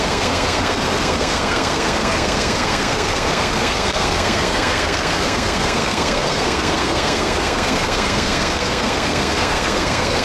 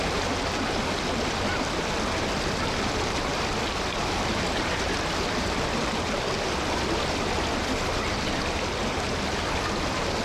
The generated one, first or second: first